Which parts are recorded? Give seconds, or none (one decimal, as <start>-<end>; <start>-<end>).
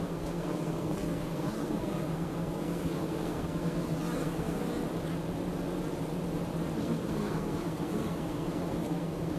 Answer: 4.7-6.8